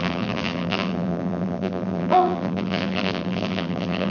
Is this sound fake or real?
fake